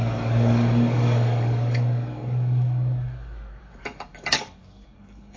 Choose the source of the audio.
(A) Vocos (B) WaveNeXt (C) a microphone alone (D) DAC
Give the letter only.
D